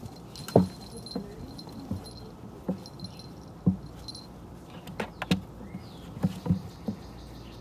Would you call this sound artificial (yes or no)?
no